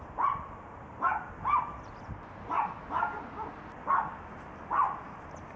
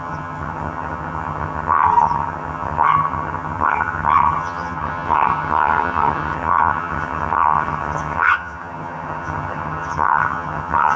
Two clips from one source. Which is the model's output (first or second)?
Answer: second